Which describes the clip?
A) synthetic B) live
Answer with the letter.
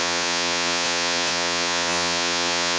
A